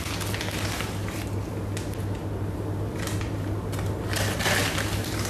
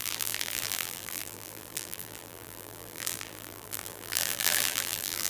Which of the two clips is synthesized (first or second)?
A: second